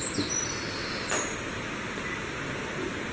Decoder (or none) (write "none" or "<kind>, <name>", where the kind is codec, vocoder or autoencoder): none